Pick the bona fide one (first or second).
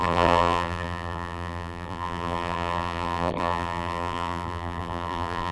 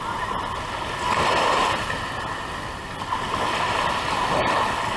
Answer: second